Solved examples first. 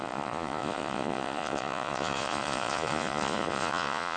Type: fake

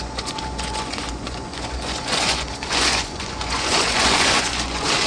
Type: fake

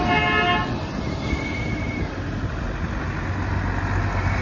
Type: real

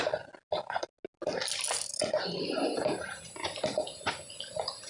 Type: real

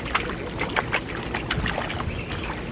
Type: real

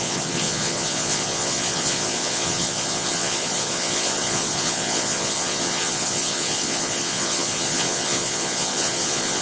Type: fake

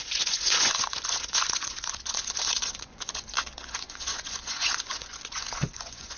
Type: fake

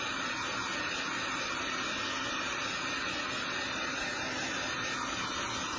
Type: real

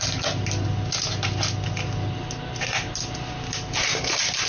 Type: real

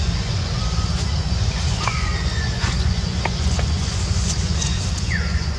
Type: fake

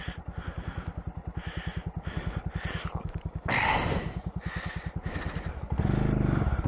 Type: real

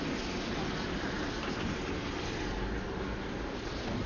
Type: real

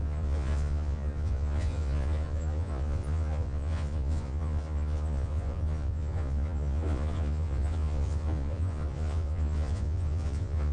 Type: fake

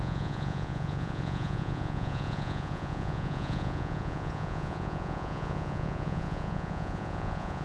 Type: fake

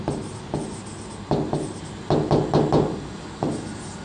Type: real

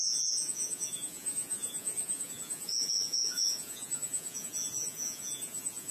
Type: fake